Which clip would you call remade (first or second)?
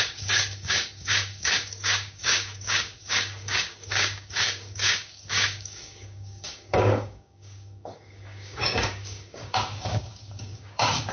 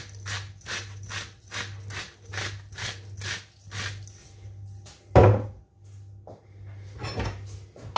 first